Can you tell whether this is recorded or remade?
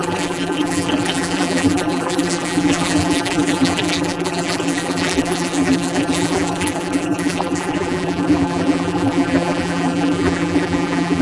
remade